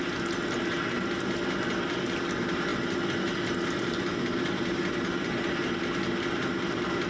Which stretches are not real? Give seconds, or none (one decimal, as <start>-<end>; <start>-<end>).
none